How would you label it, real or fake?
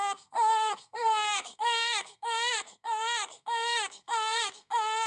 fake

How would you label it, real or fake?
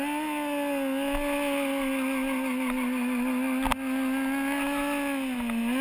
real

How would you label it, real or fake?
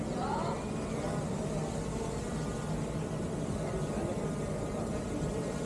real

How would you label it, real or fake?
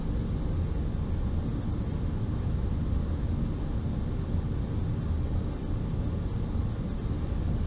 real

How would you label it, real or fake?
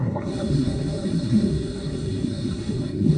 fake